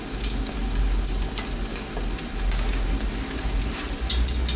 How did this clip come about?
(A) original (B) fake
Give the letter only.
A